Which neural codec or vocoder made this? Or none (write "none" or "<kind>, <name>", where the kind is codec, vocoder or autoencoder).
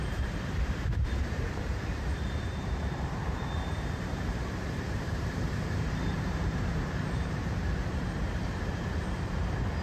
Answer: vocoder, BigVGAN v2